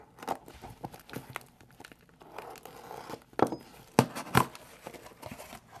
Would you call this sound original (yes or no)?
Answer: yes